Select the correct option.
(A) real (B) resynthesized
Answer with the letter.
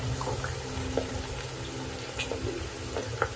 A